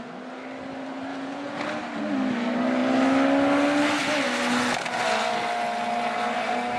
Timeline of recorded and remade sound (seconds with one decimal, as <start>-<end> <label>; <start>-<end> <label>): 0.0-1.1 recorded; 1.1-1.6 remade; 1.6-6.8 recorded